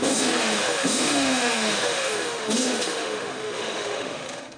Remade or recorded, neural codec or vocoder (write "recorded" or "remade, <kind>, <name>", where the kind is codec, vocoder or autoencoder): remade, autoencoder, DAC-VAE